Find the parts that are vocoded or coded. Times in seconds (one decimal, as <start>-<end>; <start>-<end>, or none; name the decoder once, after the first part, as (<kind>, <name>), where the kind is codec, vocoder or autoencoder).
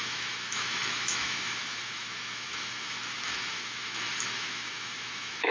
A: 0.0-5.5 (autoencoder, DAC-VAE)